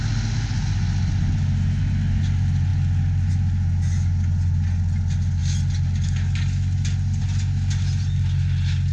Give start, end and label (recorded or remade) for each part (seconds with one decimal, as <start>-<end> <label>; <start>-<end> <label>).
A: 0.0-8.9 recorded